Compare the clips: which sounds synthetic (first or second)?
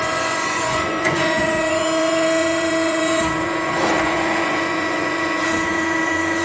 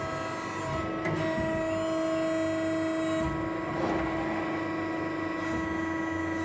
first